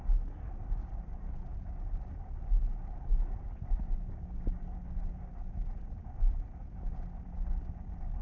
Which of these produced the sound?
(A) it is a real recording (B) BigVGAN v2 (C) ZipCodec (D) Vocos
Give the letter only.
A